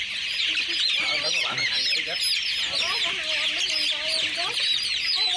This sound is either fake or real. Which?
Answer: real